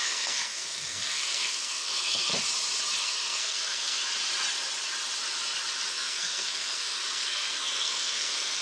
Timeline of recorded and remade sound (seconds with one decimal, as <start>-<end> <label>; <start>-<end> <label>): 0.0-2.3 remade; 2.3-3.0 recorded; 3.0-4.0 remade; 4.0-5.9 recorded; 5.9-8.6 remade